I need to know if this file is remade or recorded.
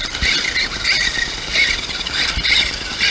recorded